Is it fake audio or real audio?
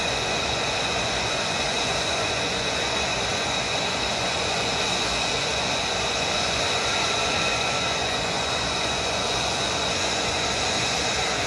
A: fake